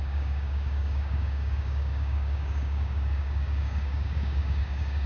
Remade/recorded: remade